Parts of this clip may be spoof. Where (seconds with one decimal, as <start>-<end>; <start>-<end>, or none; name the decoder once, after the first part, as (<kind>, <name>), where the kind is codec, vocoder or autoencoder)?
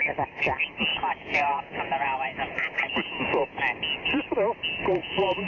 0.9-3.6 (vocoder, Vocos); 5.0-5.5